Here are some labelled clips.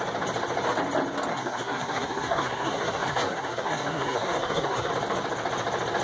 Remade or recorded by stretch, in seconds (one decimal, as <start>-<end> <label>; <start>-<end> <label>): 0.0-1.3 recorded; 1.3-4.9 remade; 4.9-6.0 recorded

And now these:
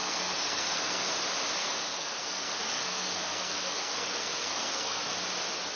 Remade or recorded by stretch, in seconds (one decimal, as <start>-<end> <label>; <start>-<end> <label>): 0.0-1.1 remade; 1.1-1.6 recorded; 1.6-5.0 remade; 5.0-5.8 recorded

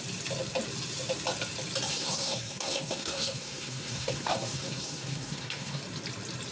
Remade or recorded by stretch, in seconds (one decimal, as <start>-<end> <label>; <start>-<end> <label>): 0.0-1.9 recorded; 1.9-5.8 remade; 5.8-6.5 recorded

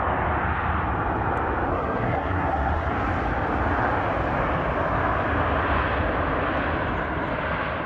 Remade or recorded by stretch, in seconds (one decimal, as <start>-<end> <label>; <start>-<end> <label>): 0.0-1.7 recorded; 1.7-2.9 remade; 2.9-7.9 recorded